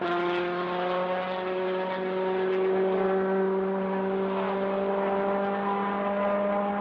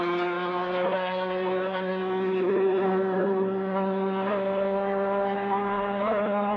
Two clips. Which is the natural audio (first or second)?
first